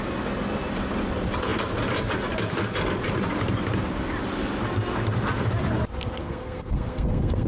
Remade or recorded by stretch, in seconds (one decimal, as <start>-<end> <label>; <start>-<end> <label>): 0.0-6.2 recorded; 6.2-7.5 remade